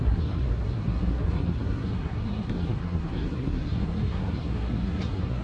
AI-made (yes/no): yes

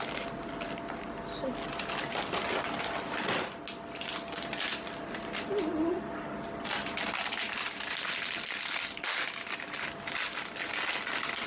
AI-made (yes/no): no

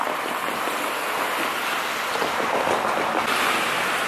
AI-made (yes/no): no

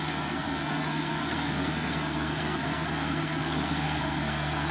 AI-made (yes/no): yes